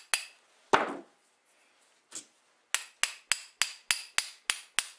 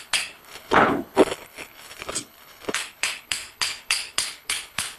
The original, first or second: first